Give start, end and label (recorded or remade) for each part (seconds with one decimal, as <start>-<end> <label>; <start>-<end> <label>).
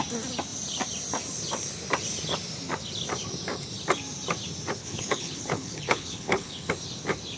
0.0-4.8 recorded; 4.8-6.7 remade; 6.7-7.4 recorded